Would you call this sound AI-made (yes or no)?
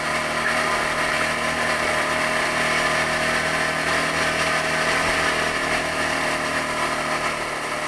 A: no